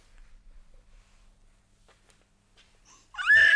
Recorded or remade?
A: recorded